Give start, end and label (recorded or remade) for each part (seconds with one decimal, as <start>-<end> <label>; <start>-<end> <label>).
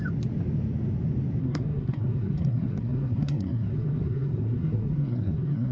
0.0-1.4 recorded; 1.4-5.7 remade